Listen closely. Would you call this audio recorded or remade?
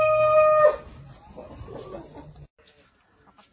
recorded